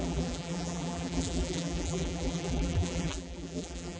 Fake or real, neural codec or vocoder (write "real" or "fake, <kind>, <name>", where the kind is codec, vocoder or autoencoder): fake, vocoder, BigVGAN v2